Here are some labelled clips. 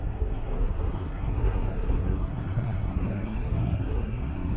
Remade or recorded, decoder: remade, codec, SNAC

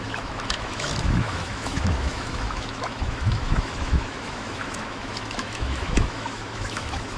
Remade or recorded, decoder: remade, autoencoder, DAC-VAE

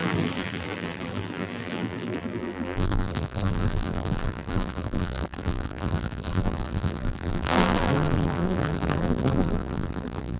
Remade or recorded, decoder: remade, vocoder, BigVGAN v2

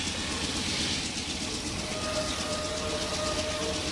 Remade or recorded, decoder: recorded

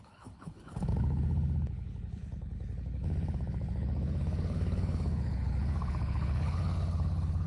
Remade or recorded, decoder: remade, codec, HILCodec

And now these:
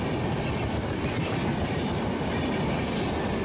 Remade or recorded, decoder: remade, vocoder, BigVGAN v2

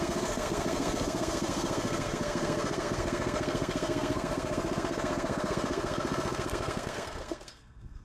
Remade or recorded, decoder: remade, codec, SNAC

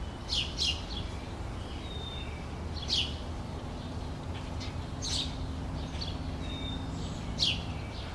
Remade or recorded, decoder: recorded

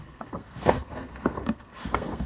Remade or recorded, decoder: remade, codec, SNAC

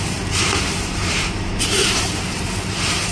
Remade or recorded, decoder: remade, vocoder, BigVGAN v2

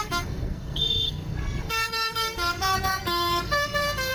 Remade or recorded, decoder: remade, codec, SNAC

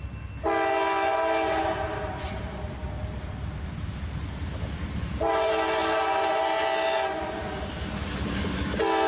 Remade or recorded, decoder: recorded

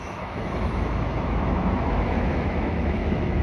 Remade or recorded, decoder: remade, autoencoder, DAC-VAE